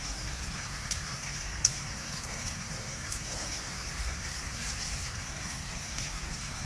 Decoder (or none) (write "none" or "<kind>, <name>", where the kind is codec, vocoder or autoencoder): codec, SNAC